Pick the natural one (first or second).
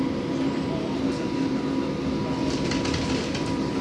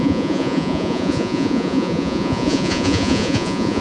first